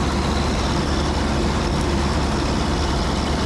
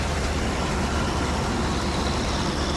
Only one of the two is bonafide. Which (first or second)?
first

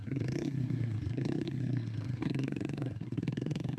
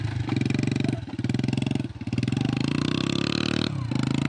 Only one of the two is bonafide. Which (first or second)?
second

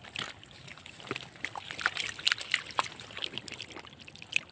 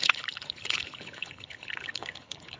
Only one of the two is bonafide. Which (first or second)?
first